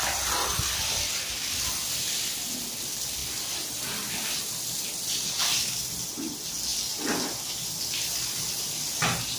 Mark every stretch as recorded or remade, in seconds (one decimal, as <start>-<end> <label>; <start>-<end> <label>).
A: 0.0-9.4 recorded